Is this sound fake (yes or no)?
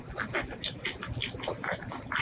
no